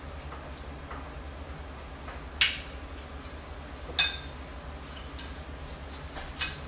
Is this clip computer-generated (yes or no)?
no